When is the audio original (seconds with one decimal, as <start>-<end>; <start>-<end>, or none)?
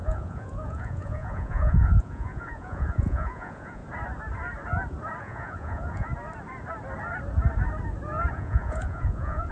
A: 3.8-5.2; 6.1-8.3